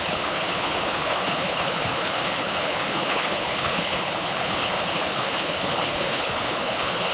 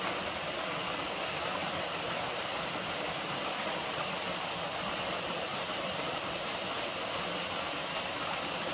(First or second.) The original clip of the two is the second